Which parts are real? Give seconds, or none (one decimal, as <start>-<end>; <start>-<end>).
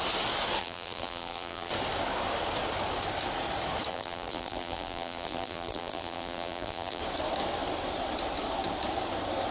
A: 0.0-0.6; 1.7-3.9; 7.0-9.5